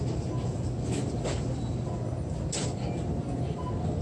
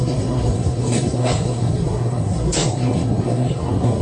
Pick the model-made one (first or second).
second